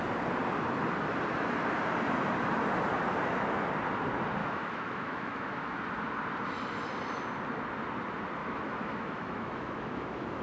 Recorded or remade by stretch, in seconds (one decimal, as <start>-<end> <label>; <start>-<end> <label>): 0.0-4.4 recorded; 4.4-5.8 remade; 5.8-8.4 recorded; 8.4-10.4 remade

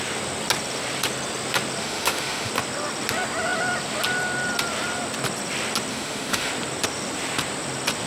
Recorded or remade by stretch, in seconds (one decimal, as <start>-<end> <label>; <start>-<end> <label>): 0.0-1.8 recorded; 1.8-2.5 remade; 2.5-5.9 recorded; 5.9-6.5 remade; 6.5-8.1 recorded

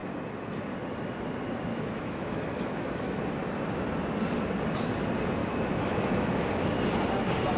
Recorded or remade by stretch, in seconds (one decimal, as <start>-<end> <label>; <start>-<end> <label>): 0.0-1.7 recorded; 1.7-3.2 remade; 3.2-5.4 recorded; 5.4-6.3 remade; 6.3-7.6 recorded

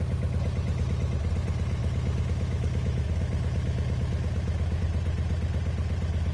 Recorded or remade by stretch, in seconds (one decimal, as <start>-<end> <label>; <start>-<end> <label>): 0.0-1.8 recorded; 1.8-4.8 remade; 4.8-6.3 recorded

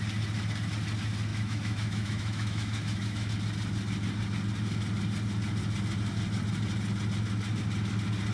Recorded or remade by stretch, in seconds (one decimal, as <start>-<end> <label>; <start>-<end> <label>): 0.0-1.3 recorded; 1.3-3.3 remade; 3.3-8.3 recorded

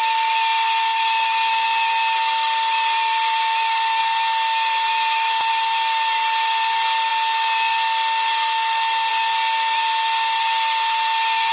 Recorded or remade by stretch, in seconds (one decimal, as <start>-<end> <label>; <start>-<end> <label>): 0.0-11.5 recorded

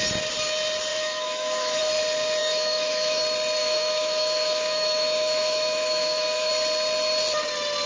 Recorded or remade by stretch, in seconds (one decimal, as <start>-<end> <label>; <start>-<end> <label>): 0.0-0.9 recorded; 0.9-1.8 remade; 1.8-2.4 recorded; 2.4-3.2 remade; 3.2-3.6 recorded; 3.6-6.5 remade; 6.5-7.9 recorded

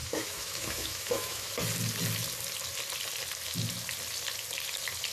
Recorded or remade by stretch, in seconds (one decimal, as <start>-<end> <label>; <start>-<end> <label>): 0.0-1.5 remade; 1.5-5.1 recorded